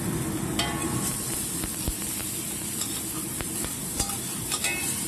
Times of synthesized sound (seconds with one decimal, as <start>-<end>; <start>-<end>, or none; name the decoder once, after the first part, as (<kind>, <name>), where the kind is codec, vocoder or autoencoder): 0.0-5.1 (vocoder, BigVGAN v2)